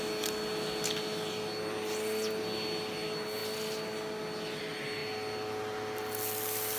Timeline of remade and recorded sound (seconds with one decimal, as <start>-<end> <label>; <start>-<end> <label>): 0.0-6.8 recorded